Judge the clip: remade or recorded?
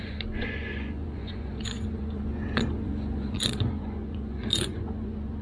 remade